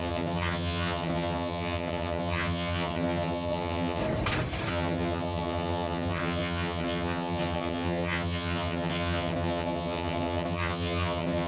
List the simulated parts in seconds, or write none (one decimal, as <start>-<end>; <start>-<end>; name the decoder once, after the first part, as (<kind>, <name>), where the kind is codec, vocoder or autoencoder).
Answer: 0.0-4.0 (vocoder, HiFi-GAN); 4.7-11.5